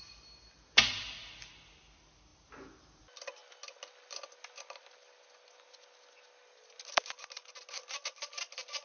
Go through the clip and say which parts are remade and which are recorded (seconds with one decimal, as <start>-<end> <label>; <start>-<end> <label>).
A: 0.0-8.8 recorded